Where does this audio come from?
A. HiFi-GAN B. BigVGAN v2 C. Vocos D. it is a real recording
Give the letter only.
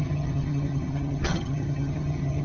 A